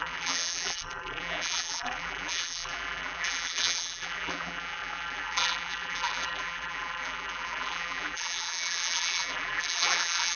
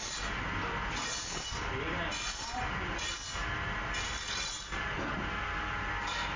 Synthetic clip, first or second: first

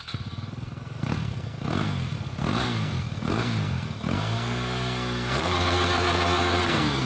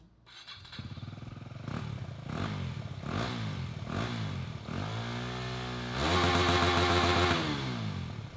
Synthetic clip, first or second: first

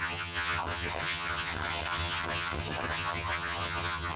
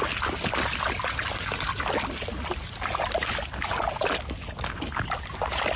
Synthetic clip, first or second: first